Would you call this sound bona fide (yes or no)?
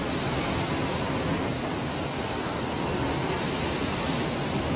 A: yes